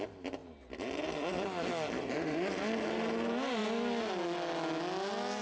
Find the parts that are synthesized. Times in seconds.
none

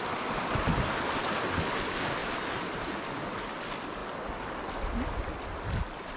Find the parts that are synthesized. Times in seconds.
none

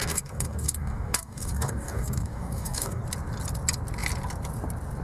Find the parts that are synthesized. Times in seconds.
0.0-3.0 (codec, DAC)

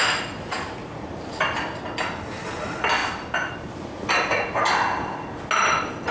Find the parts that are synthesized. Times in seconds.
none

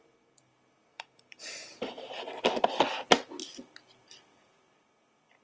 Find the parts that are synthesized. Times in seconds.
0.9-2.4 (vocoder, BigVGAN v2)

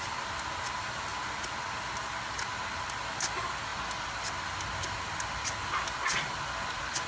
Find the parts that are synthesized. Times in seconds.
none

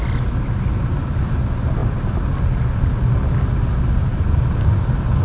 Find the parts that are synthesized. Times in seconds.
1.8-2.4 (vocoder, BigVGAN v2)